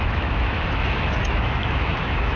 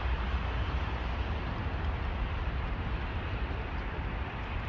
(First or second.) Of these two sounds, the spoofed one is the first